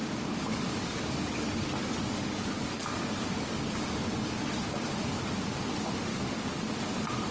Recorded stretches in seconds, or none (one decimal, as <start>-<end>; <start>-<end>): 4.4-6.1; 6.6-7.3